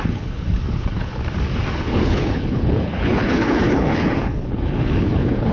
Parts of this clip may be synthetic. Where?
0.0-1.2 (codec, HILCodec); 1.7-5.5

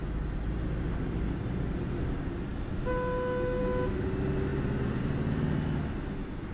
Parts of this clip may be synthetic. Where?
none

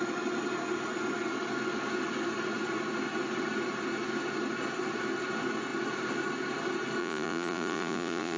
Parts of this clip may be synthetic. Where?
7.0-8.4 (vocoder, Vocos)

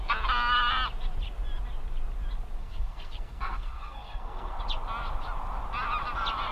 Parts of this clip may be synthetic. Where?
2.6-4.6 (codec, SNAC)

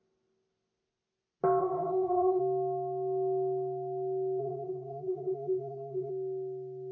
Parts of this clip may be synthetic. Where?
1.6-2.4 (codec, SNAC); 4.4-6.1